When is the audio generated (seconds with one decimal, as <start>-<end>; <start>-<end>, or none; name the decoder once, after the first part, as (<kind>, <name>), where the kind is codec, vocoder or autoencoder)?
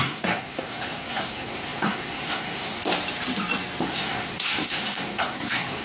0.0-2.8 (codec, SNAC); 3.8-5.8